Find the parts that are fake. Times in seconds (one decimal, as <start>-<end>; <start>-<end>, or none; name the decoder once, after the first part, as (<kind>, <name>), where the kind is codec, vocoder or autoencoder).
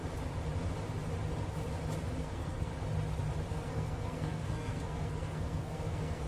2.2-2.7 (codec, SNAC); 3.5-6.3